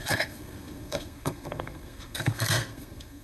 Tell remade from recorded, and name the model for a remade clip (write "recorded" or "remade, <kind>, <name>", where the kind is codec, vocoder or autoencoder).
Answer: remade, codec, SNAC